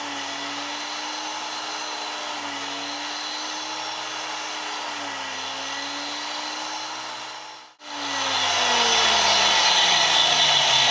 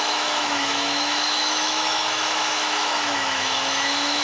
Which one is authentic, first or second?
first